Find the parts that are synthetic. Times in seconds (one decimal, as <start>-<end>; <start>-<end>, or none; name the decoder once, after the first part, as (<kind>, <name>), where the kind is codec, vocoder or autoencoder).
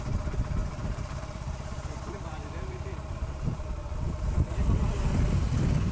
0.6-4.1 (vocoder, BigVGAN v2)